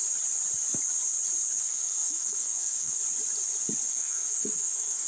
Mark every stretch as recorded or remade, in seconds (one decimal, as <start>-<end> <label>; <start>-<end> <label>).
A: 0.0-1.6 recorded; 1.6-3.0 remade; 3.0-3.9 recorded; 3.9-5.1 remade

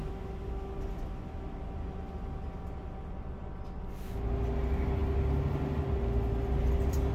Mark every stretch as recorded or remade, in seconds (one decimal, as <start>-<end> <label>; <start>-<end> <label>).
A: 0.0-7.1 recorded

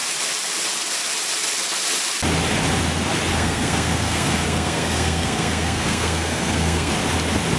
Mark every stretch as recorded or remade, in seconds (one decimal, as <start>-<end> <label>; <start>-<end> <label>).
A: 0.0-3.3 recorded; 3.3-6.9 remade; 6.9-7.6 recorded

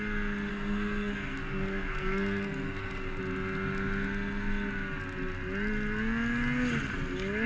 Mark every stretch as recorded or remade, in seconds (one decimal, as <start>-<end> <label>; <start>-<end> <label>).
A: 0.0-0.5 recorded; 0.5-3.2 remade; 3.2-7.5 recorded

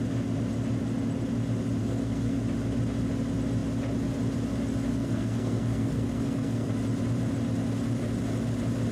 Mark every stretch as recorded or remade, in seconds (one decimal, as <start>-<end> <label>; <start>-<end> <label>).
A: 0.0-1.8 recorded; 1.8-2.4 remade; 2.4-4.9 recorded; 4.9-6.7 remade; 6.7-8.9 recorded

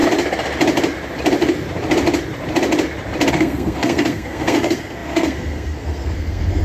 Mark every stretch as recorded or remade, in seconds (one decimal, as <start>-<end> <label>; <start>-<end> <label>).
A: 0.0-3.3 recorded; 3.3-6.6 remade